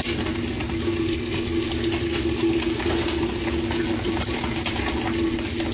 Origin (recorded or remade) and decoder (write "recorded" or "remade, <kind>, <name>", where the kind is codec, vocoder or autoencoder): recorded